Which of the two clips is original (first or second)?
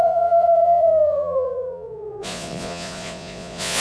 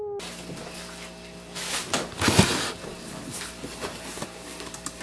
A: second